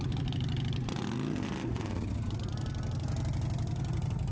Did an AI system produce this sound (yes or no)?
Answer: no